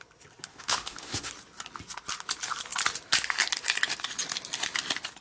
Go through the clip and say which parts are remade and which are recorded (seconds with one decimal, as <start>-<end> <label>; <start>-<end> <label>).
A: 0.0-0.5 recorded; 0.5-1.3 remade; 1.3-5.2 recorded